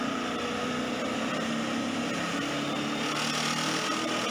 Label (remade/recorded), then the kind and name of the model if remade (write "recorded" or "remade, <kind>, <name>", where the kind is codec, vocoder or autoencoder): recorded